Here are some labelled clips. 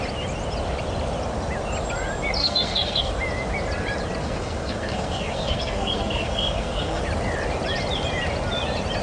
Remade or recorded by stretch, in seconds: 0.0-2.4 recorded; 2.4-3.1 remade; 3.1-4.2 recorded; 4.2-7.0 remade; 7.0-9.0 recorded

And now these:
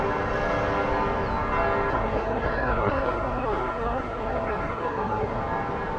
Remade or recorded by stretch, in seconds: 0.0-1.9 recorded; 1.9-5.4 remade; 5.4-6.0 recorded

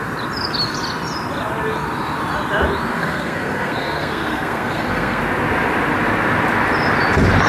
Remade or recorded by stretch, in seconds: 0.0-2.9 recorded; 2.9-5.2 remade; 5.2-7.5 recorded

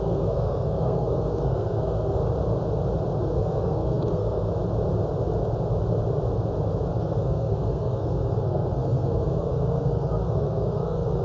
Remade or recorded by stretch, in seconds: 0.0-2.2 remade; 2.2-3.2 recorded; 3.2-4.5 remade; 4.5-7.0 recorded; 7.0-11.2 remade

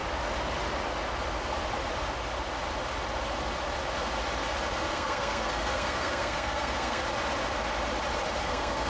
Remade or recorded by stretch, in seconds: 0.0-4.9 recorded; 4.9-7.0 remade; 7.0-8.4 recorded; 8.4-8.9 remade

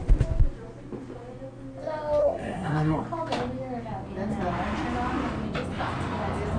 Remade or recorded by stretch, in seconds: 0.0-2.2 recorded; 2.2-3.0 remade; 3.0-6.6 recorded

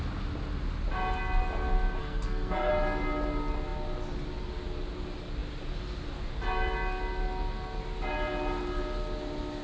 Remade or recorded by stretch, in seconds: 0.0-2.0 recorded; 2.0-2.7 remade; 2.7-9.6 recorded

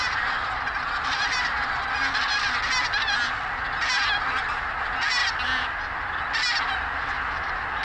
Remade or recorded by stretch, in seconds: 0.0-7.8 recorded